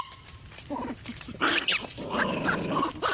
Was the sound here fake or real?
fake